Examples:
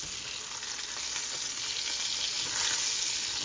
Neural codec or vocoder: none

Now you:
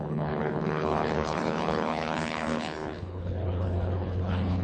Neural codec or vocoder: codec, HILCodec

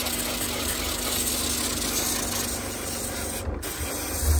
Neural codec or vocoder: none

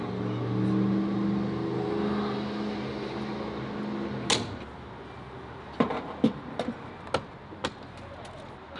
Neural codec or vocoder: none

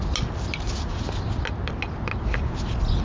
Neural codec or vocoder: none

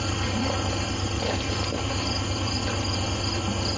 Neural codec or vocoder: none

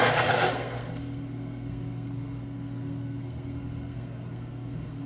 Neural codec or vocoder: codec, SNAC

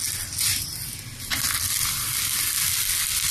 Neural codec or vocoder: none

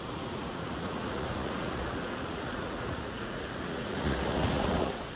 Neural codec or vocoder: vocoder, Vocos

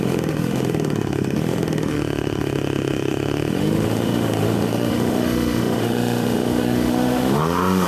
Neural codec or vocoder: autoencoder, DAC-VAE